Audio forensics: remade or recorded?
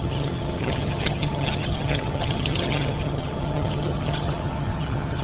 remade